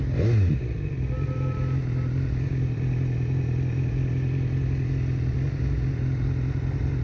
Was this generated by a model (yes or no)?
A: no